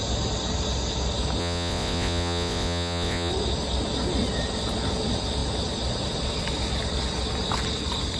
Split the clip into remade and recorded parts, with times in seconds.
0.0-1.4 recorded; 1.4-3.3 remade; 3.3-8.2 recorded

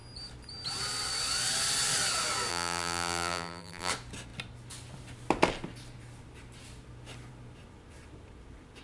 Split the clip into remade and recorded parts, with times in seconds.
0.0-2.5 recorded; 2.5-3.9 remade; 3.9-8.8 recorded